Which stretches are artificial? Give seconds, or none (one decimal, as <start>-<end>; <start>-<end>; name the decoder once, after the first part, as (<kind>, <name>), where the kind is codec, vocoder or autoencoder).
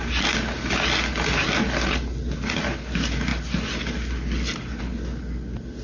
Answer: none